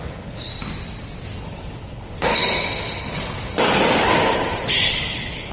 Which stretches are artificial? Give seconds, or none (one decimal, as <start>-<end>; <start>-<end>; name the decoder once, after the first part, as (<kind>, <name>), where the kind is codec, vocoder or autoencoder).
0.0-0.5 (codec, HILCodec); 1.4-2.3; 4.9-5.5